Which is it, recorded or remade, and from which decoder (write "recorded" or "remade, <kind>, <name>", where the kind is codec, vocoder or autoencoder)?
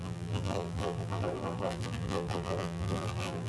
remade, vocoder, BigVGAN v2